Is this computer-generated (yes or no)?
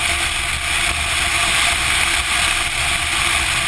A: no